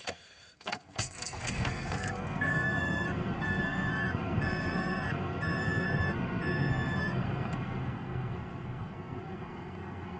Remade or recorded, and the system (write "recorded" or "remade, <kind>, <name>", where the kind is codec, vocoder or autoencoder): remade, codec, SNAC